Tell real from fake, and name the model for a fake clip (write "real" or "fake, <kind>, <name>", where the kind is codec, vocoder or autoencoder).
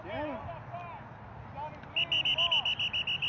real